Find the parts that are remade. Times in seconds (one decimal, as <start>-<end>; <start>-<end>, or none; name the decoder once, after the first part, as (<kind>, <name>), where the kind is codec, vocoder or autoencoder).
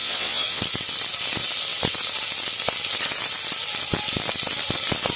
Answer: 0.0-0.6 (vocoder, Vocos)